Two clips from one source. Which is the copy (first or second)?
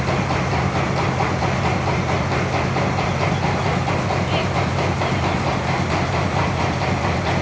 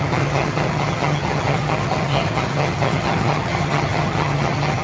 second